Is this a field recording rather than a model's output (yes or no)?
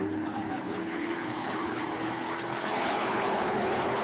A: no